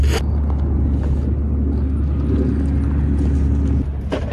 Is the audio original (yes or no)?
yes